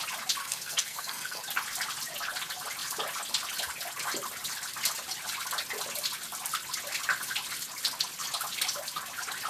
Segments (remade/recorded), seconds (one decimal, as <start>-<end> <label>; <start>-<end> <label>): 0.0-0.4 recorded; 0.4-1.4 remade; 1.4-9.5 recorded

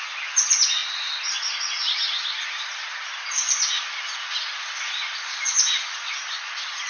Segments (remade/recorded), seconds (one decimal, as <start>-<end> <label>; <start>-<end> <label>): 0.0-6.9 recorded

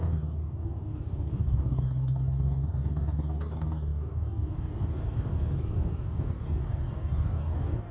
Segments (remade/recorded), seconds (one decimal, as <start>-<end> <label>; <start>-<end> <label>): 0.0-7.9 remade

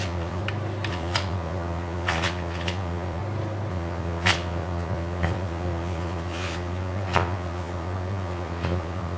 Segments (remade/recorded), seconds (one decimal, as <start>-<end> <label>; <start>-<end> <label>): 0.0-0.4 remade; 0.4-0.9 recorded; 0.9-3.2 remade; 3.2-3.7 recorded; 3.7-9.2 remade

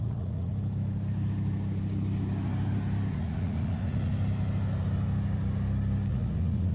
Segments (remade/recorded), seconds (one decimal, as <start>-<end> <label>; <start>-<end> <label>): 0.0-0.5 remade; 0.5-3.1 recorded; 3.1-4.1 remade; 4.1-6.1 recorded; 6.1-6.7 remade

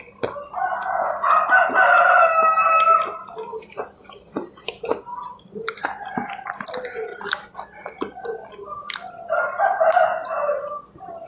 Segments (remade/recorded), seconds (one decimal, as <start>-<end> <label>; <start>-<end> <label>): 0.0-3.5 recorded; 3.5-4.9 remade; 4.9-11.3 recorded